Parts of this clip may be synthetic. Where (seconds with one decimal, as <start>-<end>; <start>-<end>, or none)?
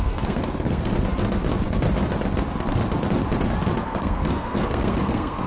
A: 0.0-0.9; 3.8-5.5